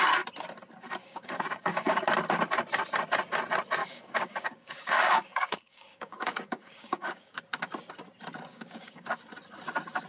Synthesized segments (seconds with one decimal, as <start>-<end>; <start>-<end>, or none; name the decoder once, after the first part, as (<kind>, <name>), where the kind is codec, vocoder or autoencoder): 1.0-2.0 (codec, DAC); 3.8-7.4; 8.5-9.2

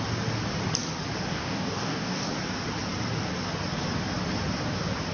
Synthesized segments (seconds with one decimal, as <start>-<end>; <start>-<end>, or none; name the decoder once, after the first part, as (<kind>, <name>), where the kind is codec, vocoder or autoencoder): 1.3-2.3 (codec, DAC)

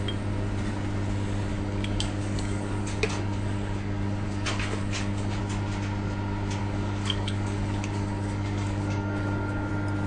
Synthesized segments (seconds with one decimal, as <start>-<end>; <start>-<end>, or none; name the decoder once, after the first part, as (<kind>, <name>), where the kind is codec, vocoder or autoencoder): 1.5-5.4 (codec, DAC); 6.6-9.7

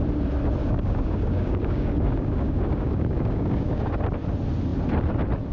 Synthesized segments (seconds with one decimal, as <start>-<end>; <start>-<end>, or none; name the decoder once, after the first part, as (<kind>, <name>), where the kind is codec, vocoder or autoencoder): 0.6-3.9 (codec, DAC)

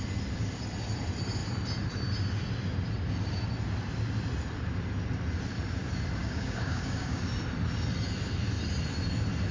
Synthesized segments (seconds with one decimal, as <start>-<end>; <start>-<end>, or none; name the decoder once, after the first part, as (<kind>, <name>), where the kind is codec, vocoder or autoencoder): 6.2-7.2 (codec, DAC)

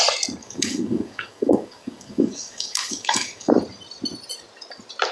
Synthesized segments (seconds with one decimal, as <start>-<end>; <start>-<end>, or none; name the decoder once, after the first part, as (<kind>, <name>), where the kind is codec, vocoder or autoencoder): 0.4-3.5 (codec, DAC)